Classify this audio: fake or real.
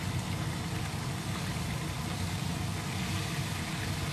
real